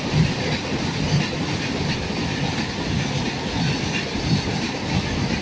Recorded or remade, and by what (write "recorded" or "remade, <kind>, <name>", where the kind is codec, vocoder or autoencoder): recorded